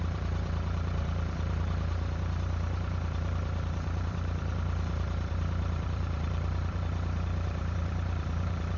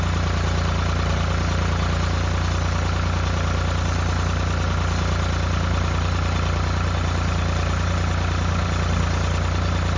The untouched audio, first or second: second